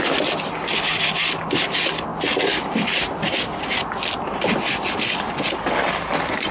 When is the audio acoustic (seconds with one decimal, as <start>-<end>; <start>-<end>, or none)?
0.0-6.5